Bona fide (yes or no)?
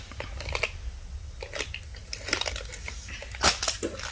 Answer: yes